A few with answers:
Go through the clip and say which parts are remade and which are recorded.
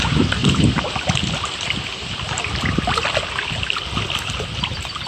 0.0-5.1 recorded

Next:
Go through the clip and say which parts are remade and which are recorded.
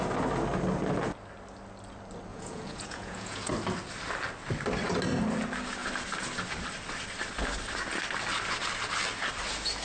0.0-2.3 recorded; 2.3-3.5 remade; 3.5-9.8 recorded